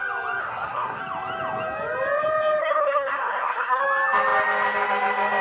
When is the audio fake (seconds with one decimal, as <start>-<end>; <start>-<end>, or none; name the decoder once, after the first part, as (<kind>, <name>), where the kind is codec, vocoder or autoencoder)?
0.4-1.0 (codec, SNAC); 2.6-3.8

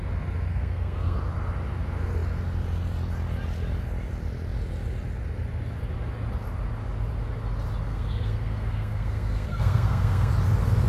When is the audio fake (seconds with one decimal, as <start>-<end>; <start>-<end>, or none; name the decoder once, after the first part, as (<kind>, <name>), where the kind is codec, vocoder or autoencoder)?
0.5-1.2 (codec, SNAC); 7.9-10.3

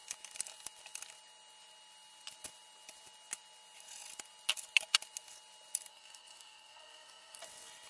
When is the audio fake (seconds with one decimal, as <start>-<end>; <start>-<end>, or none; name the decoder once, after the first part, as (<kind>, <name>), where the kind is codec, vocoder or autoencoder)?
5.9-7.4 (codec, SNAC)

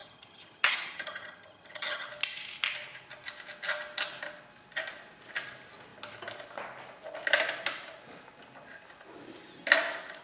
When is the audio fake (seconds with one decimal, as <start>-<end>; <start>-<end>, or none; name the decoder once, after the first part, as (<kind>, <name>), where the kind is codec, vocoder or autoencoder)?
0.0-2.1 (vocoder, HiFi-GAN)